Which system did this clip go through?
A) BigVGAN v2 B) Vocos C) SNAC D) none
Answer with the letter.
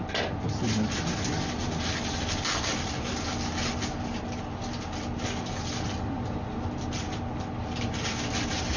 D